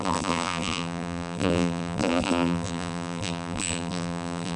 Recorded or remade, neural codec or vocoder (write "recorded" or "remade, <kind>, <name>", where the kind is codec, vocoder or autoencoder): remade, vocoder, BigVGAN v2